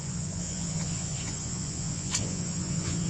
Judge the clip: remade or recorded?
remade